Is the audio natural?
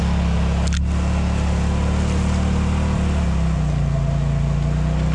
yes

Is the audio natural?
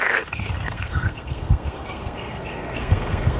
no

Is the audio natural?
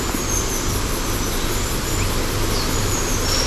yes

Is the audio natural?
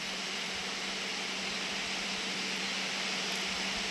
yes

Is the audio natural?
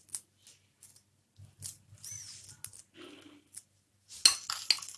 yes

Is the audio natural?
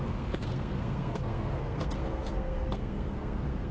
no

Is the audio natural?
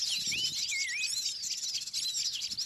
yes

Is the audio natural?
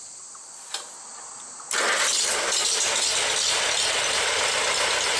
yes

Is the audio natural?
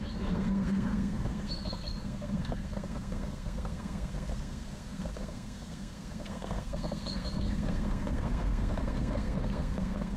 no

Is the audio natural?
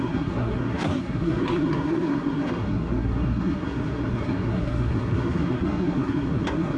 no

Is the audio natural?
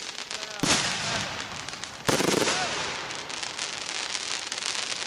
yes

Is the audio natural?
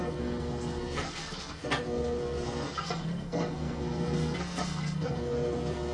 no